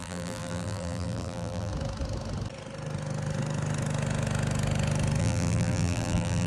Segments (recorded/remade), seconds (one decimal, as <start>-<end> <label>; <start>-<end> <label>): 0.0-1.7 remade; 1.7-5.2 recorded; 5.2-6.5 remade